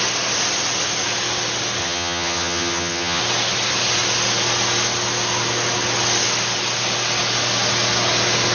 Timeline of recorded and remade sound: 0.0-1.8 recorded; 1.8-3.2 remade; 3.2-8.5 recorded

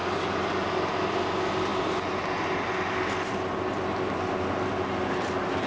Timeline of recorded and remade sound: 0.0-5.7 recorded

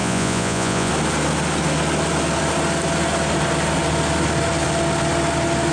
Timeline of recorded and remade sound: 0.0-0.9 remade; 0.9-5.7 recorded

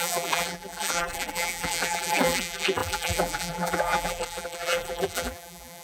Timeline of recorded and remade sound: 0.0-5.8 remade